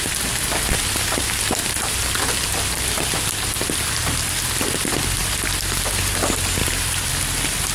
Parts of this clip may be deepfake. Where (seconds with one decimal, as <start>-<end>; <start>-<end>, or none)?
5.2-6.1; 6.6-7.1